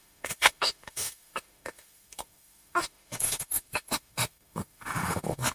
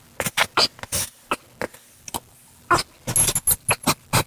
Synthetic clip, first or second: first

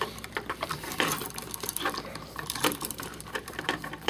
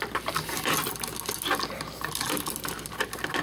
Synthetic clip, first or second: first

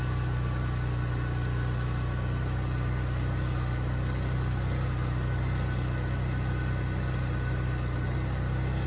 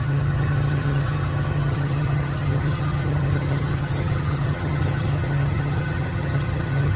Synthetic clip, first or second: second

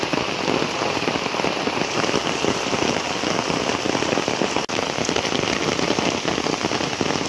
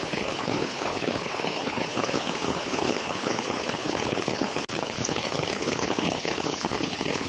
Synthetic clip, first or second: second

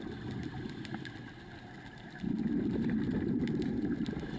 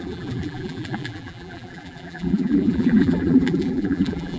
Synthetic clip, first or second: second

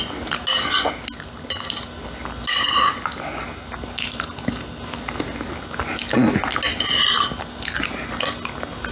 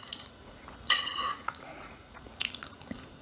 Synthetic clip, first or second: second